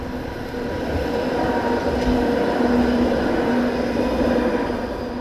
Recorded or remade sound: recorded